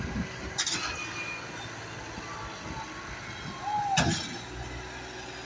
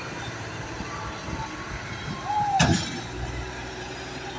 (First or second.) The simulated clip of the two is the second